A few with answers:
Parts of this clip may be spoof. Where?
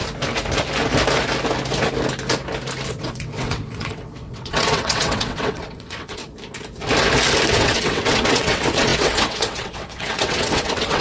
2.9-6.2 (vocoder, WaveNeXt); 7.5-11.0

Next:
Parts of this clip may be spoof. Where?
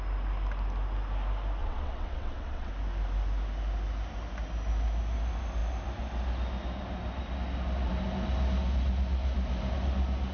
1.6-2.7 (vocoder, WaveNeXt)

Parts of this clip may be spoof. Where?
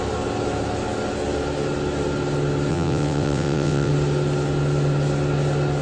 2.7-3.9 (vocoder, WaveNeXt)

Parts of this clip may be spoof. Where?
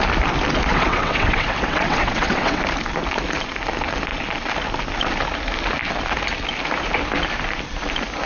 0.7-2.6 (vocoder, WaveNeXt)